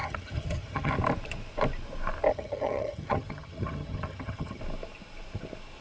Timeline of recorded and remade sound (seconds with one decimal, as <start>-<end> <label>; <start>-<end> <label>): 0.0-0.9 remade; 0.9-2.3 recorded; 2.3-4.6 remade; 4.6-5.8 recorded